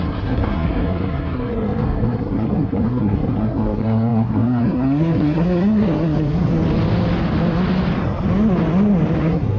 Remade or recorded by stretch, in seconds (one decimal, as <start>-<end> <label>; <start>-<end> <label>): 0.0-6.5 remade; 6.5-9.2 recorded; 9.2-9.6 remade